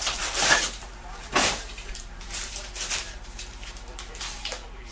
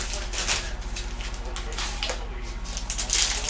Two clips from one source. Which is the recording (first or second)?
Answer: second